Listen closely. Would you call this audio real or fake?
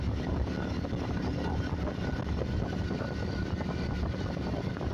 real